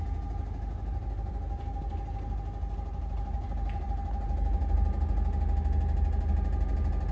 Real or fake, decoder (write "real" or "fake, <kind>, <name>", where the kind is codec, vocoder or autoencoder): real